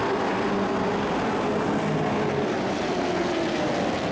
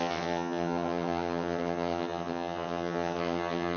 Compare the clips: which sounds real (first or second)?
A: first